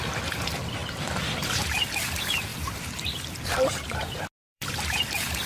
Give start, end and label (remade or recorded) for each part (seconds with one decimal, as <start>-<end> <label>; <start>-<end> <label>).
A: 0.0-2.5 recorded; 2.5-3.3 remade; 3.3-4.4 recorded; 4.4-5.5 remade